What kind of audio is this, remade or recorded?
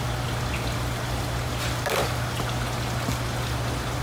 recorded